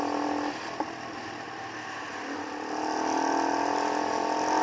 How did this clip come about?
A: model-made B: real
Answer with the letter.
B